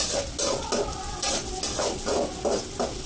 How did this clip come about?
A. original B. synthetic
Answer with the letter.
A